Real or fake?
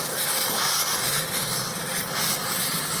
real